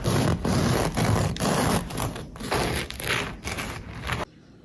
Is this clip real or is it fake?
real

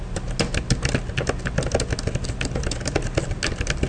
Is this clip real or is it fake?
real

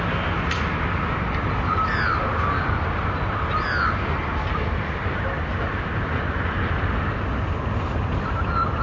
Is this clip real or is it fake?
real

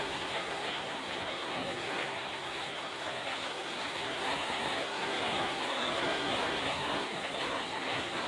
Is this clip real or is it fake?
fake